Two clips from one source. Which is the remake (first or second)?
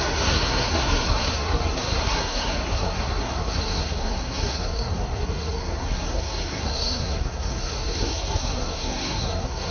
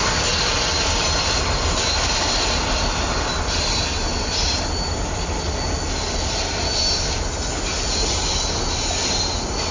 first